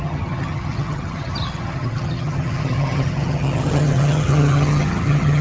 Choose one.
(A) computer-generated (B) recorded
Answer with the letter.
A